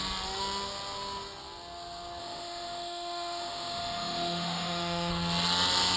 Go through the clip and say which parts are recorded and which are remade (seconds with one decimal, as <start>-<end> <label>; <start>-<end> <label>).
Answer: 0.0-2.2 recorded; 2.2-5.1 remade; 5.1-6.0 recorded

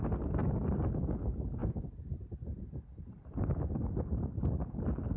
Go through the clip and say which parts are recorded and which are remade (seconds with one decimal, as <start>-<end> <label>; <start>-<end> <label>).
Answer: 0.0-0.4 recorded; 0.4-1.0 remade; 1.0-1.6 recorded; 1.6-4.6 remade; 4.6-5.2 recorded

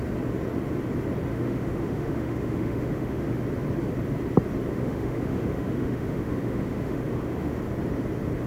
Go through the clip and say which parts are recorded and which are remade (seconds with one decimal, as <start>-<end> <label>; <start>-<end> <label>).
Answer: 0.0-1.3 recorded; 1.3-3.4 remade; 3.4-4.7 recorded; 4.7-7.6 remade; 7.6-8.5 recorded

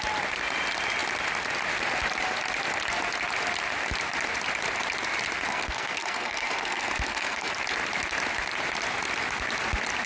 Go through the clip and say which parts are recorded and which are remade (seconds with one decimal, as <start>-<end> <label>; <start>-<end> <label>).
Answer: 0.0-5.5 recorded; 5.5-7.5 remade; 7.5-10.1 recorded

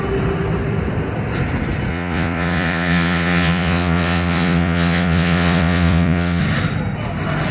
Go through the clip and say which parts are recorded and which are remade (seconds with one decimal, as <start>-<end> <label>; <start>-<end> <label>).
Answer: 0.0-1.9 recorded; 1.9-6.4 remade; 6.4-7.5 recorded

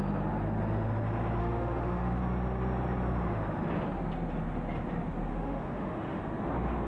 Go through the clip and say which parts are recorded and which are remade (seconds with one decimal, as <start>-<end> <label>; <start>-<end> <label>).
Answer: 0.0-1.4 recorded; 1.4-2.2 remade; 2.2-5.3 recorded; 5.3-6.2 remade; 6.2-6.9 recorded